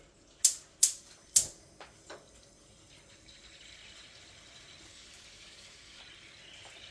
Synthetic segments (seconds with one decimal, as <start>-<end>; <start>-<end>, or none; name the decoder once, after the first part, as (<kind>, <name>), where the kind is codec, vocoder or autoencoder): 4.9-6.0 (codec, DAC)